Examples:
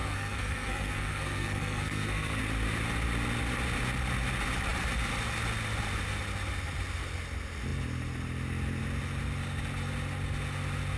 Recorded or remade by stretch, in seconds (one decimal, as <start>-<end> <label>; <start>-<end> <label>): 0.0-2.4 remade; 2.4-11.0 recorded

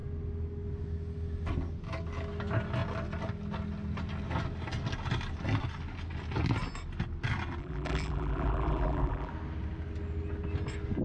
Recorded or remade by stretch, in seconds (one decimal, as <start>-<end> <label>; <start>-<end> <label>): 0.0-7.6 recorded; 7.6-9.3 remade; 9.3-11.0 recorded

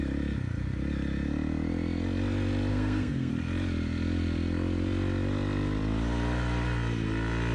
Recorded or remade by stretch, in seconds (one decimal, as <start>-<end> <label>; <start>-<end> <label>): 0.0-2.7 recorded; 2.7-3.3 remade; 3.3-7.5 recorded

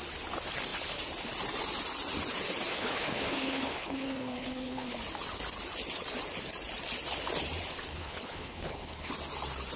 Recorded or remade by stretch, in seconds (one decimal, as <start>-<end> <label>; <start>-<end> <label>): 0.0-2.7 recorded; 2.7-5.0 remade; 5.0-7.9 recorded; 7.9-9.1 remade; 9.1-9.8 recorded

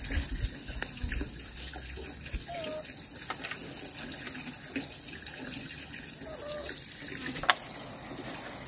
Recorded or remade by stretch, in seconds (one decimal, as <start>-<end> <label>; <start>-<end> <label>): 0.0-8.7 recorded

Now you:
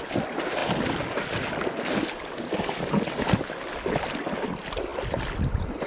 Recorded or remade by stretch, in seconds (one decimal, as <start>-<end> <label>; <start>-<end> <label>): 0.0-5.9 recorded